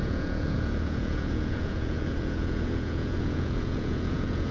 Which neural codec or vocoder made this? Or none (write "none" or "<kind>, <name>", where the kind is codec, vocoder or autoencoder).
vocoder, Vocos